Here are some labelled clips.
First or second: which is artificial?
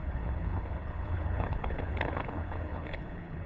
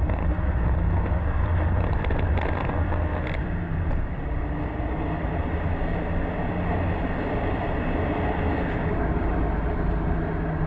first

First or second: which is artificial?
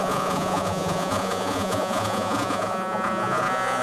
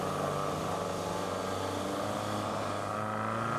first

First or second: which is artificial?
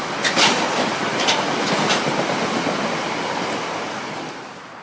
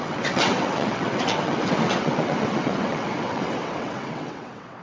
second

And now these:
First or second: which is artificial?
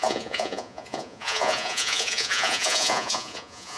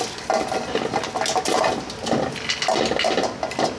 first